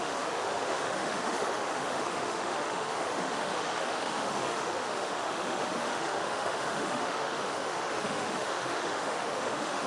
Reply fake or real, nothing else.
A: fake